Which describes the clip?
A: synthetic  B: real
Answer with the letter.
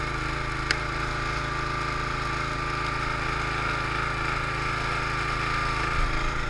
B